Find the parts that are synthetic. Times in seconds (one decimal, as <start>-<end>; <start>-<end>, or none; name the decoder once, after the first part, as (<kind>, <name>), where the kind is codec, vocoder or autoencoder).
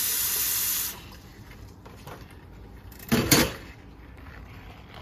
0.0-5.0 (vocoder, BigVGAN v2)